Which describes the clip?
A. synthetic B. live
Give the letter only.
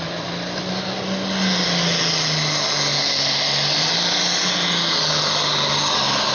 B